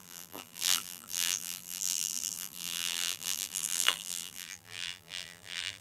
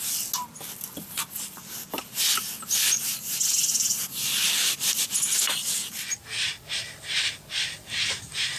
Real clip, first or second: second